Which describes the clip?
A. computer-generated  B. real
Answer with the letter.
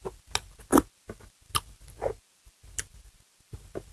B